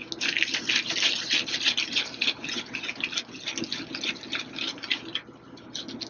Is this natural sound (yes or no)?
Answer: yes